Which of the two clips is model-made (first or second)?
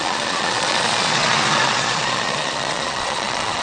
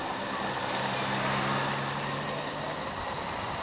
first